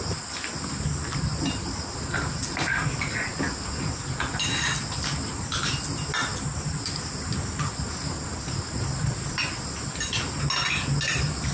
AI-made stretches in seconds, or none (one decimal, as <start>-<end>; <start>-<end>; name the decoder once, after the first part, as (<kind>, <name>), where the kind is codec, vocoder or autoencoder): none